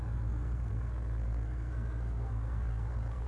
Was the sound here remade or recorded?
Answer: remade